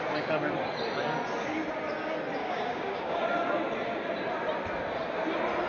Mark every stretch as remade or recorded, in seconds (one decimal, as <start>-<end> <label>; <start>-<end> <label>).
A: 0.0-2.4 recorded; 2.4-3.2 remade; 3.2-5.7 recorded